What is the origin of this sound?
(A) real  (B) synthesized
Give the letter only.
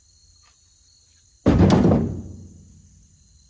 A